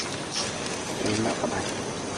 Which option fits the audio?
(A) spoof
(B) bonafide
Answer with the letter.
B